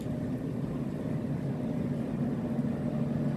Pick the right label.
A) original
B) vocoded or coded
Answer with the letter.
A